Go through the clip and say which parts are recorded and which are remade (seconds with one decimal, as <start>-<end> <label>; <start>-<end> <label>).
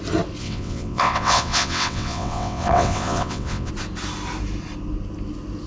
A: 0.0-0.4 recorded; 0.4-3.7 remade; 3.7-5.7 recorded